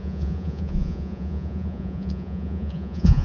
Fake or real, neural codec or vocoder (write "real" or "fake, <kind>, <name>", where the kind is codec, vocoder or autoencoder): fake, vocoder, Vocos